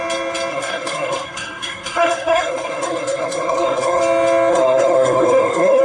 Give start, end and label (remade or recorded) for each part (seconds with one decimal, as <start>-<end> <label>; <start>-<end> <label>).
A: 0.0-0.5 recorded; 0.5-4.0 remade; 4.0-4.5 recorded; 4.5-5.8 remade